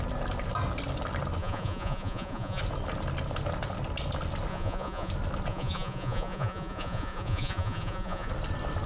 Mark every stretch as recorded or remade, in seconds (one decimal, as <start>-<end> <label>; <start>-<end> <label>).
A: 0.0-1.4 recorded; 1.4-2.6 remade; 2.6-4.5 recorded; 4.5-5.1 remade; 5.1-5.5 recorded; 5.5-8.3 remade; 8.3-8.9 recorded